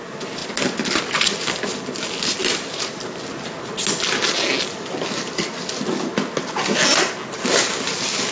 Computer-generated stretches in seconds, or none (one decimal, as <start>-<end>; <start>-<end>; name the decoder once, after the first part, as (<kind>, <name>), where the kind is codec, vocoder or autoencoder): none